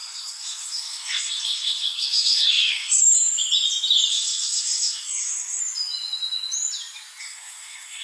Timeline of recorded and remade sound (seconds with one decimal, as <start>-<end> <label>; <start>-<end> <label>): 0.0-3.0 remade; 3.0-4.1 recorded; 4.1-5.6 remade; 5.6-7.2 recorded; 7.2-8.0 remade